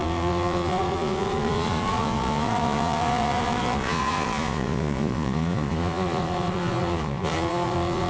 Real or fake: fake